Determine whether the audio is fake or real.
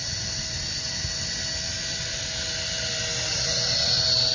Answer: real